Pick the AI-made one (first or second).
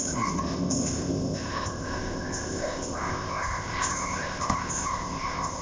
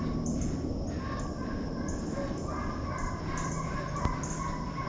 first